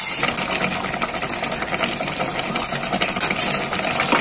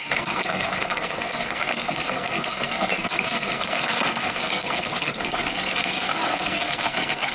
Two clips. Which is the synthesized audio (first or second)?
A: second